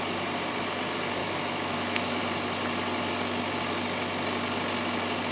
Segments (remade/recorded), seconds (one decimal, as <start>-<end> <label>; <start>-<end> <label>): 0.0-1.2 recorded; 1.2-2.2 remade; 2.2-5.3 recorded